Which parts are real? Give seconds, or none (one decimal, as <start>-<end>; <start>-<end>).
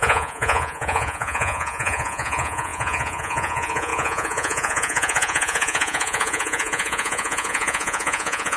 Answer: none